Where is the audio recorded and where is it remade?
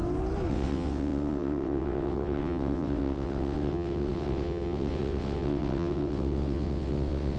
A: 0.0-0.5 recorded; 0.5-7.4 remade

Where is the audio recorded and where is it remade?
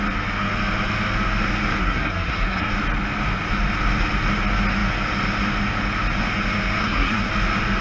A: 0.0-1.8 recorded; 1.8-2.7 remade; 2.7-6.8 recorded; 6.8-7.3 remade; 7.3-7.8 recorded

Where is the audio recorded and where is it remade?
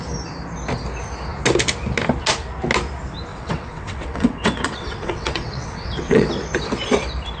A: 0.0-3.3 recorded; 3.3-6.3 remade; 6.3-7.4 recorded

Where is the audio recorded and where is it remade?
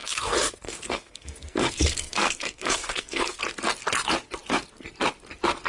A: 0.0-3.4 remade; 3.4-5.7 recorded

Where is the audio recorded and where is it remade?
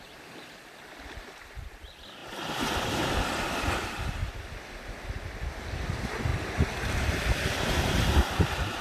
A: 0.0-4.2 remade; 4.2-5.6 recorded; 5.6-6.3 remade; 6.3-6.9 recorded; 6.9-8.8 remade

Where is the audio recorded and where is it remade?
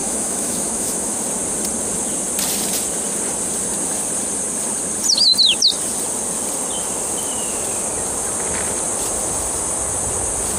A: 0.0-1.1 remade; 1.1-10.6 recorded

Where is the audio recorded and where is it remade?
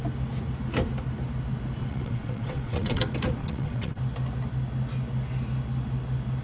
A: 0.0-1.8 recorded; 1.8-3.0 remade; 3.0-3.4 recorded; 3.4-4.0 remade; 4.0-6.4 recorded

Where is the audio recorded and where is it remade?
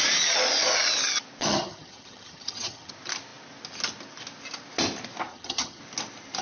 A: 0.0-1.4 recorded; 1.4-2.9 remade; 2.9-5.3 recorded; 5.3-5.8 remade; 5.8-6.4 recorded